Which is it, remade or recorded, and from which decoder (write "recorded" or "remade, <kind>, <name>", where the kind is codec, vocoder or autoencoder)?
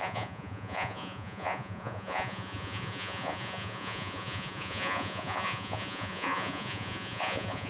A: remade, vocoder, Vocos